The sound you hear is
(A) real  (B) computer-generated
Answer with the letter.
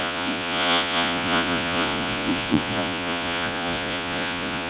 B